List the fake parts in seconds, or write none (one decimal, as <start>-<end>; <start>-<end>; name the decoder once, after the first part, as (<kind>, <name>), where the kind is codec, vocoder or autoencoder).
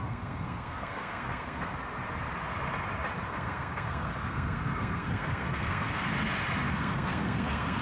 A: 0.0-1.7 (codec, SNAC); 3.3-6.1; 6.7-7.8